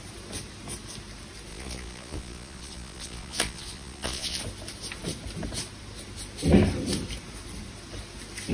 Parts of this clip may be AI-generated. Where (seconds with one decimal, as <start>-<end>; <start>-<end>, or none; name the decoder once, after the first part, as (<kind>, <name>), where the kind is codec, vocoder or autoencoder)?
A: 1.5-4.4 (vocoder, Vocos)